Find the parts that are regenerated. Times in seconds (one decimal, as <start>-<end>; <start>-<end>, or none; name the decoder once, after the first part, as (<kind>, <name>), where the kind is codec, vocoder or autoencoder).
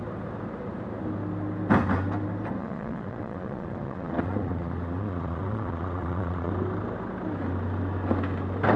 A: 2.6-6.5 (vocoder, Vocos)